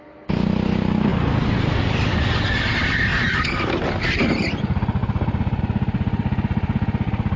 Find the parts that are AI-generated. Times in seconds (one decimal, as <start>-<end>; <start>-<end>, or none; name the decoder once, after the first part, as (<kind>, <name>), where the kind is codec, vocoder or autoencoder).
none

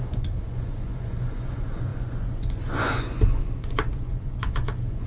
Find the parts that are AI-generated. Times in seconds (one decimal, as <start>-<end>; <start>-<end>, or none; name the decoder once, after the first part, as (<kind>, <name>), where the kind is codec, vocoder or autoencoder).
0.0-5.1 (vocoder, Vocos)

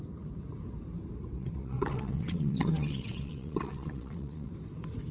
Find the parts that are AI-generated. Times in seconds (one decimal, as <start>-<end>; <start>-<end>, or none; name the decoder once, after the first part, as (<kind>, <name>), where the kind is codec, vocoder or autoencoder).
1.4-4.5 (vocoder, WaveNeXt)

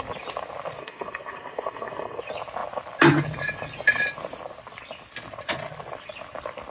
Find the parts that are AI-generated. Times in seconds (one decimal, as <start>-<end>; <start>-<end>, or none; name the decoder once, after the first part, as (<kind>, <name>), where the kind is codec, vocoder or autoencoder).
0.8-2.2 (codec, SNAC)

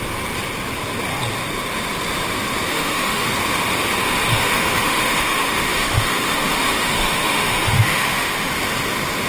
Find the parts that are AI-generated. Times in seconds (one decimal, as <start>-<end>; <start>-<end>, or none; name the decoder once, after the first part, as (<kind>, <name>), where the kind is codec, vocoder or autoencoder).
2.7-3.3 (autoencoder, DAC-VAE); 4.3-8.5